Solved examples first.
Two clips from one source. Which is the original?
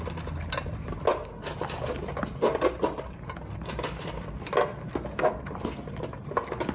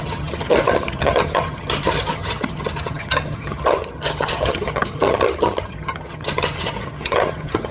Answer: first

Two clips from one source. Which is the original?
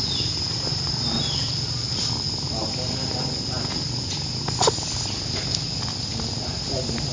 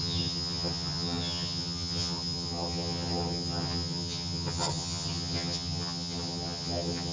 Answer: first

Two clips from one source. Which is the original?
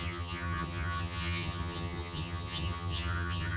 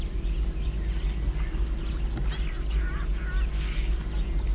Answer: second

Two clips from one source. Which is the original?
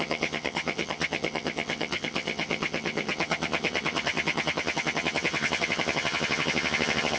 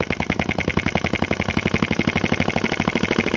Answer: second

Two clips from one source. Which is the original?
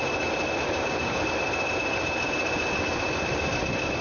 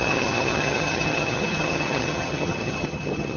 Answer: first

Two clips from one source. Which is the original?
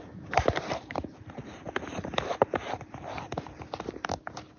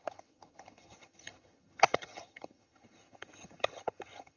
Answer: first